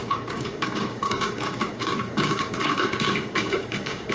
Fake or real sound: fake